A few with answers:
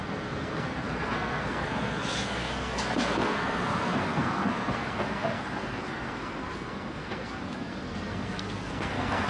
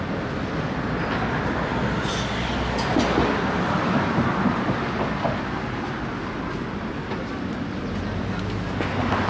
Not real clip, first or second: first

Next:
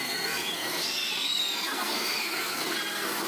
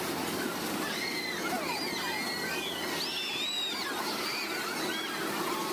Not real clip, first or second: first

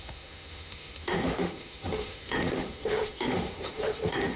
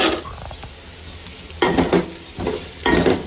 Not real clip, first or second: first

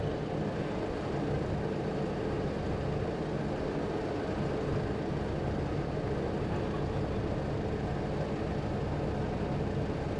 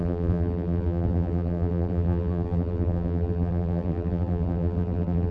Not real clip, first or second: second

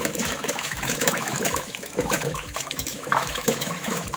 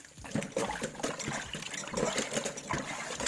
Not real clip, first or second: first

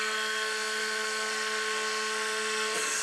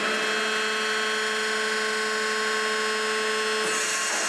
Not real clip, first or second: first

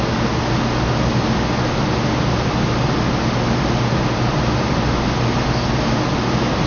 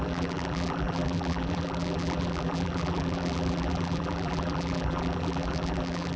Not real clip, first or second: second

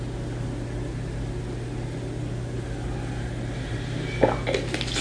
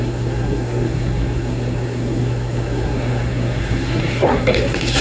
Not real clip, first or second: second